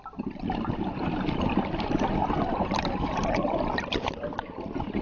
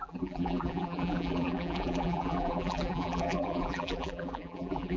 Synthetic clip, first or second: second